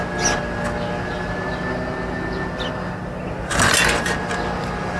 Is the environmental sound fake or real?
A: real